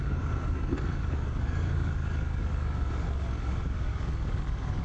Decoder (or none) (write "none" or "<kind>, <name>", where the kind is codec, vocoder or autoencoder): codec, DAC